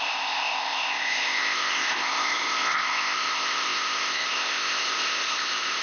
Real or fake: fake